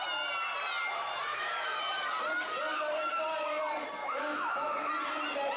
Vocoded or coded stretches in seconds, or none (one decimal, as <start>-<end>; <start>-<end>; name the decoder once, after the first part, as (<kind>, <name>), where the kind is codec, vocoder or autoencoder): 1.3-1.8 (autoencoder, DAC-VAE); 4.0-4.9